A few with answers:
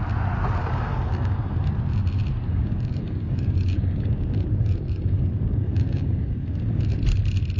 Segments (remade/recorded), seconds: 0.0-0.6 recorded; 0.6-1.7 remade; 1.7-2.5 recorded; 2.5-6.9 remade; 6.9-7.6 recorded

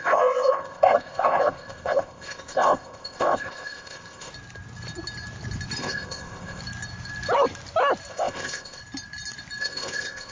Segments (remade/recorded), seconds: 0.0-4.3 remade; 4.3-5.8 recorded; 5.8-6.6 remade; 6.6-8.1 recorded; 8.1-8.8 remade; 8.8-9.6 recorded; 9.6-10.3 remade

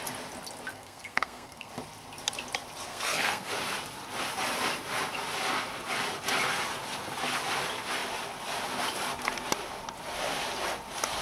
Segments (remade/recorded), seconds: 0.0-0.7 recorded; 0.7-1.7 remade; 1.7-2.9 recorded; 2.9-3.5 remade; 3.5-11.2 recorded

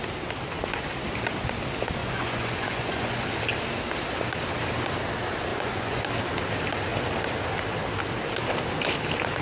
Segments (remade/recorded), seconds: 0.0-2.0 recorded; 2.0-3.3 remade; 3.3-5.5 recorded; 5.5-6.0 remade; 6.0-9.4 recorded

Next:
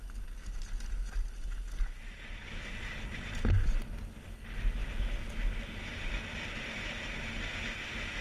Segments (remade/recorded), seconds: 0.0-8.2 recorded